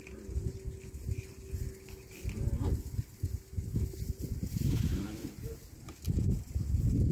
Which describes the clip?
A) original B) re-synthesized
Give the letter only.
A